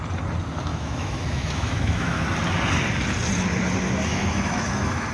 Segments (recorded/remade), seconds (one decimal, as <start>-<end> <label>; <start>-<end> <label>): 0.0-0.7 recorded; 0.7-2.2 remade; 2.2-4.1 recorded; 4.1-5.1 remade